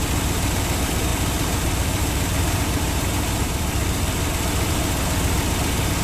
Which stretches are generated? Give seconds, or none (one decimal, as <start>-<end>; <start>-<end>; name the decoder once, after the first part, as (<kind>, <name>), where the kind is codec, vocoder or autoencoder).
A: 1.1-4.7 (vocoder, BigVGAN v2)